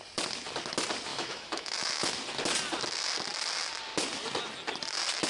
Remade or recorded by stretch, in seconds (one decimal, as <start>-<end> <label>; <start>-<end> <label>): 0.0-1.1 recorded; 1.1-2.1 remade; 2.1-5.3 recorded